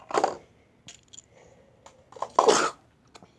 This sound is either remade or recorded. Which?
recorded